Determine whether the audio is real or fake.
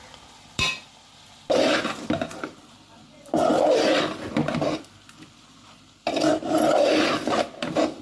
fake